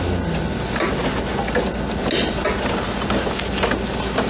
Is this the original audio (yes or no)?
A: yes